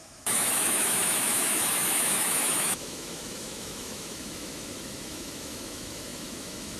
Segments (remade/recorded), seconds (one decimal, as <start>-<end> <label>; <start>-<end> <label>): 0.0-6.8 remade